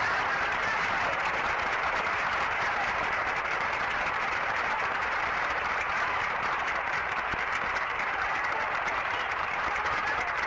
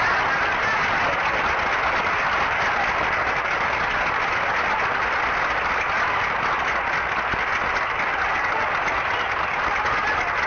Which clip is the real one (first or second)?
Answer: second